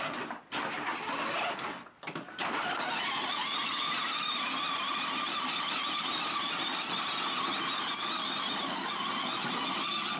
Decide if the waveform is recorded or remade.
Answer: recorded